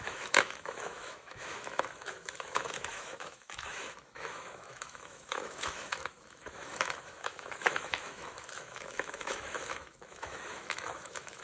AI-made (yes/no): yes